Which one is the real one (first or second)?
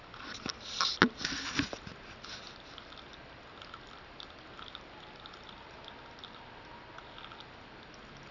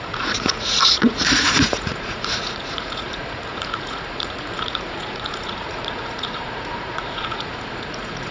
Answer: first